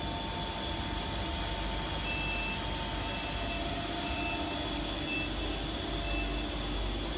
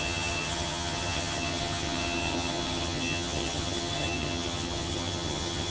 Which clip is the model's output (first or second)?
second